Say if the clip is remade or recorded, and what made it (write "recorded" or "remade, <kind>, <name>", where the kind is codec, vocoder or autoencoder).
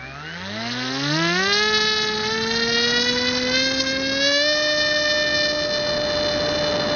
recorded